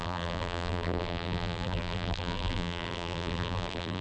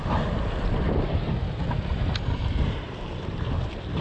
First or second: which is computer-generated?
first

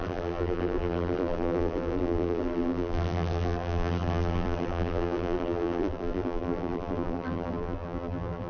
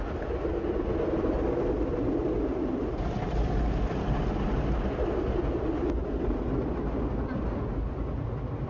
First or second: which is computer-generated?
first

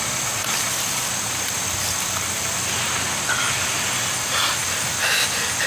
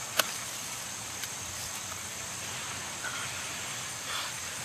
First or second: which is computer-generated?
second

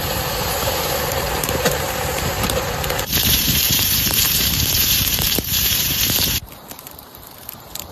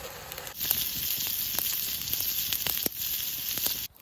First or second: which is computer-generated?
first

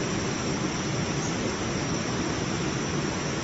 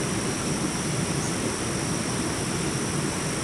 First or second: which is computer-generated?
second